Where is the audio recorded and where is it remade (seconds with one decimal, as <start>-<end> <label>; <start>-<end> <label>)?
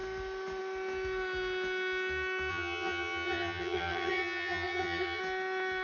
0.0-2.5 recorded; 2.5-5.2 remade; 5.2-5.8 recorded